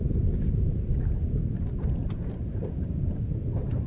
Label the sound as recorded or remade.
recorded